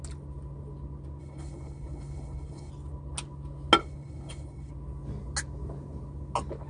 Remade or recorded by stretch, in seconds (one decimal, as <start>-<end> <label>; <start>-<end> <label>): 0.0-1.2 recorded; 1.2-2.7 remade; 2.7-3.8 recorded; 3.8-4.7 remade; 4.7-6.7 recorded